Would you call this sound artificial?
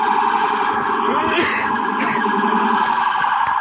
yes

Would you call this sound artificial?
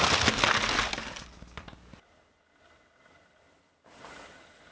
no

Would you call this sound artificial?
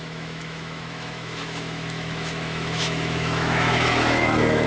yes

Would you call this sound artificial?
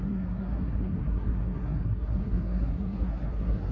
yes